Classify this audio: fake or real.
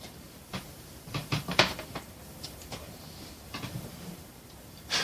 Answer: fake